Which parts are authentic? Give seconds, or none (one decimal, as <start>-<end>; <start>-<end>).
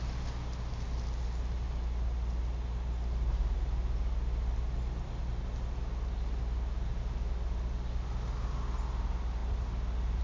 0.0-10.2